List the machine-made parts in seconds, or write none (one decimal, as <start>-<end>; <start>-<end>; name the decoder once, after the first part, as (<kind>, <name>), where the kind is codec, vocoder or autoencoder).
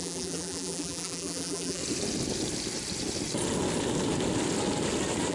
0.0-1.8 (vocoder, BigVGAN v2)